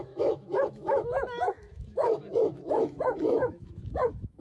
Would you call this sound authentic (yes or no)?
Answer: no